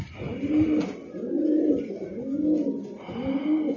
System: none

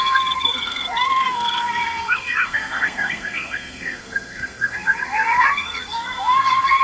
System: codec, SNAC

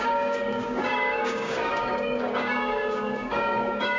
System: codec, DAC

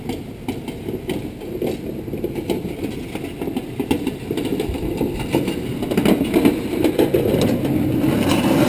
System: none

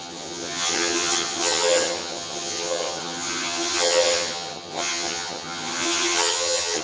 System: vocoder, HiFi-GAN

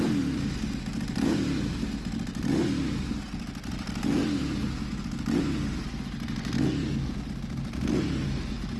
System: none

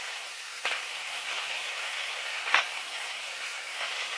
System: codec, SNAC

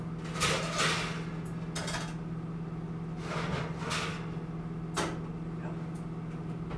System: none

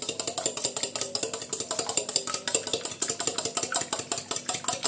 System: none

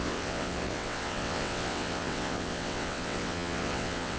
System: vocoder, WaveNeXt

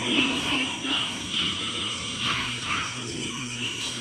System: codec, SNAC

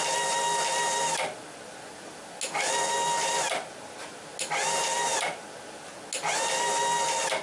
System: none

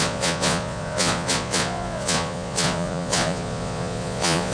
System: vocoder, Vocos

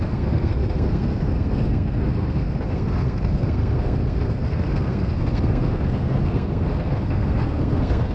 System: codec, SNAC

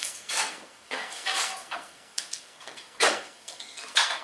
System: codec, SNAC